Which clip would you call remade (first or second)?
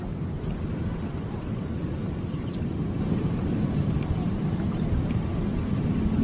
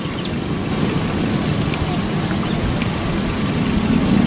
first